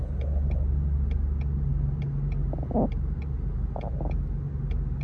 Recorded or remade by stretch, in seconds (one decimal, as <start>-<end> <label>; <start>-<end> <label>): 0.0-5.0 recorded